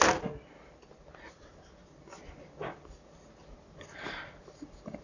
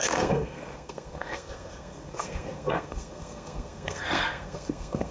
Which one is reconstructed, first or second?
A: second